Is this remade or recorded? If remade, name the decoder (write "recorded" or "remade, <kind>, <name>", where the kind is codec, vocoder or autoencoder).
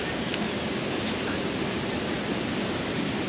recorded